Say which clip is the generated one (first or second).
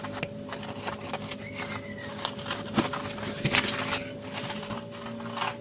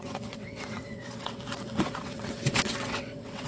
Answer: second